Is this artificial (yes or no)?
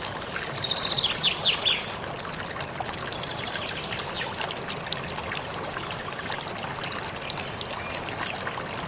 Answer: no